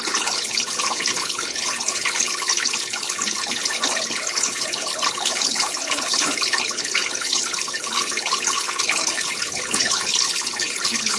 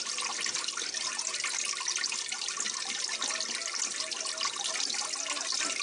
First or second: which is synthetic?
first